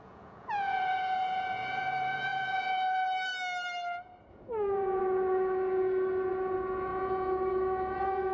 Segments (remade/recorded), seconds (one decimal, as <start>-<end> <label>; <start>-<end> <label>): 0.0-3.3 remade; 3.3-4.3 recorded; 4.3-8.3 remade

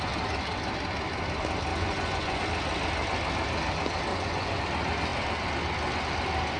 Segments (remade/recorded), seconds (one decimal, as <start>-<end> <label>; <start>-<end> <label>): 0.0-1.7 recorded; 1.7-2.4 remade; 2.4-4.1 recorded; 4.1-4.6 remade; 4.6-6.6 recorded

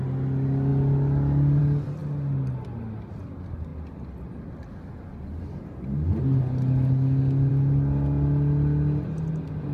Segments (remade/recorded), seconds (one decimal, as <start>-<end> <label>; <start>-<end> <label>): 0.0-9.7 recorded

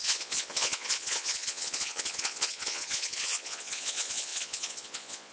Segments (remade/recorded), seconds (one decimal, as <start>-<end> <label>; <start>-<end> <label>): 0.0-5.3 remade